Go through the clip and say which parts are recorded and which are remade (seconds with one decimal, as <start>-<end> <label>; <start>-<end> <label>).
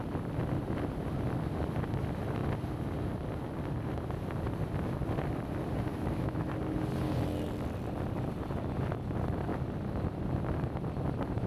0.0-5.9 recorded; 5.9-6.5 remade; 6.5-11.5 recorded